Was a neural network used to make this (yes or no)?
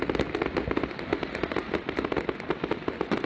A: yes